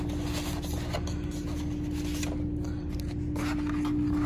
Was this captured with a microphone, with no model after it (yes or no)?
yes